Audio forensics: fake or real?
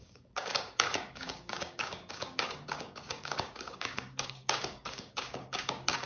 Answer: fake